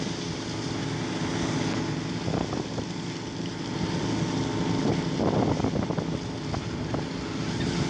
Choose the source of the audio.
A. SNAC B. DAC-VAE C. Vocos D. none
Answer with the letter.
D